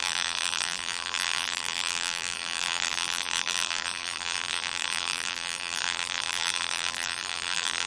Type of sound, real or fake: fake